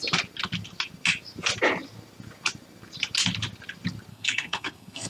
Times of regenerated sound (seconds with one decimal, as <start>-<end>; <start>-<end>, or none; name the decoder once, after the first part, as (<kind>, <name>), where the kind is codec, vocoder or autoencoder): 4.1-5.1 (codec, SNAC)